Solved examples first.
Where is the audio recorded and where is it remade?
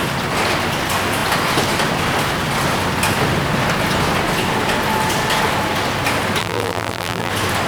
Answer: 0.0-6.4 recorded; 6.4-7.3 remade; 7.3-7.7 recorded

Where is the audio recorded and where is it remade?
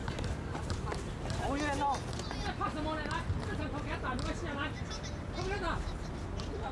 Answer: 0.0-1.1 remade; 1.1-6.7 recorded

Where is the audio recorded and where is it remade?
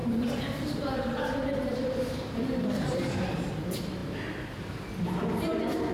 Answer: 0.0-3.5 remade; 3.5-5.9 recorded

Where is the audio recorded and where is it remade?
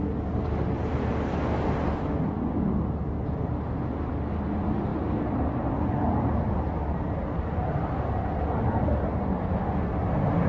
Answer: 0.0-10.5 recorded